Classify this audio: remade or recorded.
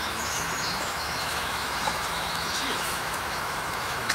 remade